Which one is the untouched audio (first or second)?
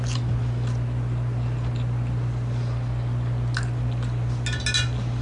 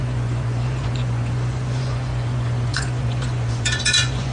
first